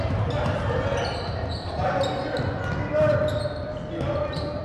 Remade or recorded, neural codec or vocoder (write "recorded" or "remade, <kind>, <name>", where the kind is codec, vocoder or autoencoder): recorded